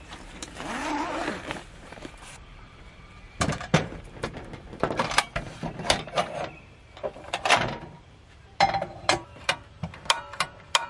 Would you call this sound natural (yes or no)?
no